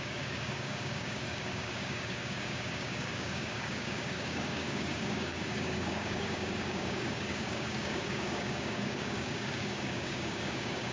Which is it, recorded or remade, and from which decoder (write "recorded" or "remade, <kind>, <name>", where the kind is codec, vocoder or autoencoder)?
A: remade, codec, DAC